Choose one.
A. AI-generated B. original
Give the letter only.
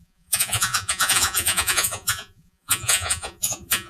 A